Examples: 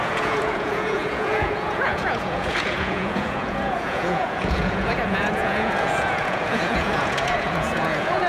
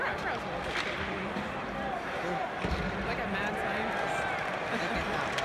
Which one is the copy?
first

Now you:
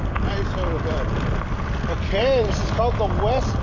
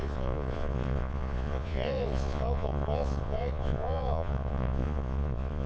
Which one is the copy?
second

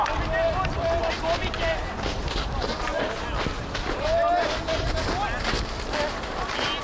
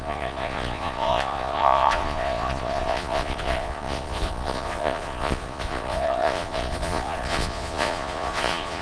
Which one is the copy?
second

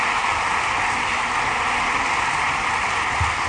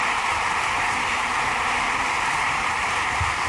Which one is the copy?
second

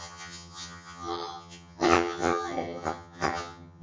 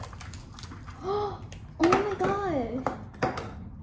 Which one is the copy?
first